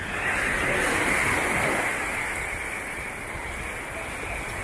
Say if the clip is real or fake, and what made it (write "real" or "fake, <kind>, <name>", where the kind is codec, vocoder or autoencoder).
real